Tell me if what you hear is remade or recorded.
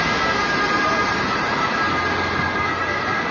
recorded